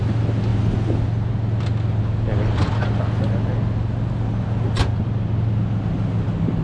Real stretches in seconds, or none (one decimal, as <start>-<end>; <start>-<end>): 0.0-6.6